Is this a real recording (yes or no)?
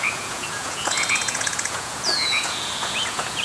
no